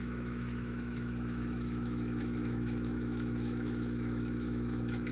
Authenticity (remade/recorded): remade